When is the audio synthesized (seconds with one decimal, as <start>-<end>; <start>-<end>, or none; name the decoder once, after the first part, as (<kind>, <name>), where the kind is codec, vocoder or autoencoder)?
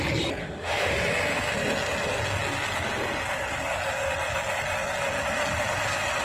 0.4-0.9 (autoencoder, DAC-VAE)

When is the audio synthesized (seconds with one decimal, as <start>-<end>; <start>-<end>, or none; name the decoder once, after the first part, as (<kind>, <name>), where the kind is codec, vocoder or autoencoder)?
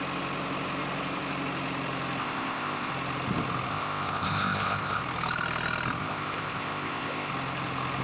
2.2-2.9 (codec, ZipCodec); 3.7-5.0; 6.0-7.3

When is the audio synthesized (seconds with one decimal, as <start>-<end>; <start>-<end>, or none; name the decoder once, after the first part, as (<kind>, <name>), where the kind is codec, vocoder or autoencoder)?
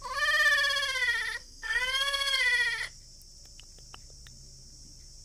1.4-2.4 (codec, SNAC)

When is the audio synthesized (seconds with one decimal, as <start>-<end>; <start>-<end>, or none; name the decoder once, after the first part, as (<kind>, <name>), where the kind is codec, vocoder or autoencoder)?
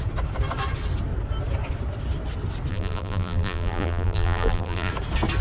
2.7-4.9 (vocoder, BigVGAN v2)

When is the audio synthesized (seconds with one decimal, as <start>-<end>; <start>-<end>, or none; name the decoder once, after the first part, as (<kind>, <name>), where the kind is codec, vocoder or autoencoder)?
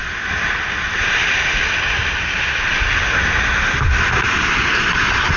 none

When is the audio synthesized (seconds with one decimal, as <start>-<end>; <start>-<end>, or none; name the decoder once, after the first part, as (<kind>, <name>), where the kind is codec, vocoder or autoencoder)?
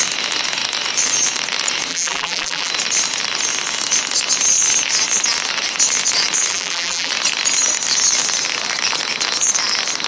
1.9-2.7 (vocoder, BigVGAN v2); 6.5-7.1